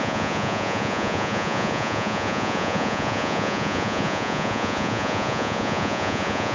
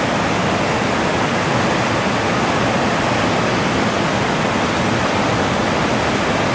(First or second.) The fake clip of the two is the first